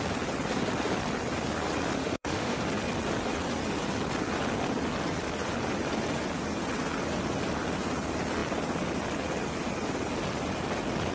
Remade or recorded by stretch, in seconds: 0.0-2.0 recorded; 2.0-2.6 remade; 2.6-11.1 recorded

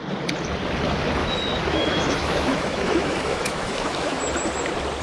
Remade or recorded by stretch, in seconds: 0.0-1.2 recorded; 1.2-4.2 remade; 4.2-5.0 recorded